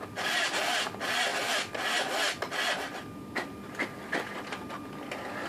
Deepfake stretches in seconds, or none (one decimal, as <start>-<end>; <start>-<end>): none